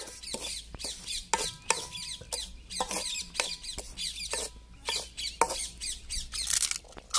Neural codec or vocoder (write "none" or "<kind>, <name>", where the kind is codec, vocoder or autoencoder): none